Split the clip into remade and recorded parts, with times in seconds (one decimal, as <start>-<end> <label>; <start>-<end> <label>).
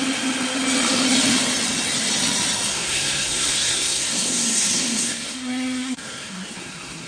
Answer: 0.0-2.7 recorded; 2.7-7.1 remade